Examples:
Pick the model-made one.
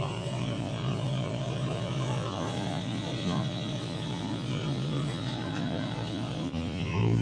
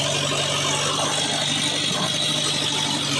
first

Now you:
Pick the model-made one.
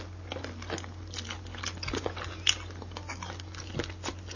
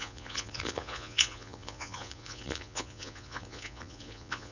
second